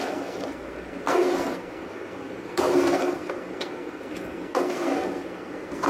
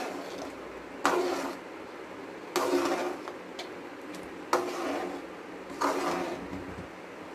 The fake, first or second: first